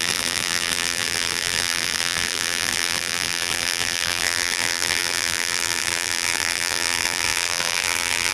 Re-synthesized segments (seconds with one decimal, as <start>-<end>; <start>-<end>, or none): 0.0-8.3